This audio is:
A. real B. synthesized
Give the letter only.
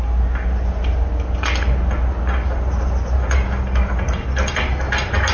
A